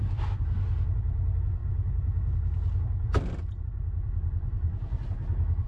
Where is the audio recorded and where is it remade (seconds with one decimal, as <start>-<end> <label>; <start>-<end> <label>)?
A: 0.0-5.7 recorded